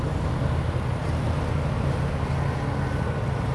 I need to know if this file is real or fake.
real